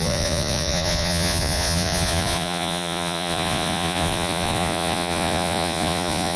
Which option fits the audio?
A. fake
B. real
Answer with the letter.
A